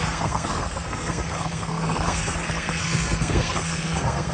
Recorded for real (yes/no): no